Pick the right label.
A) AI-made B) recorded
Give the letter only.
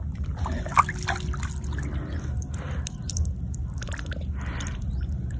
B